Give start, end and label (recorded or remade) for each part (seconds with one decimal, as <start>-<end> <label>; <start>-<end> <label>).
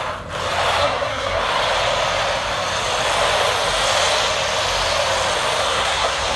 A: 0.0-0.8 recorded; 0.8-1.4 remade; 1.4-5.6 recorded; 5.6-6.4 remade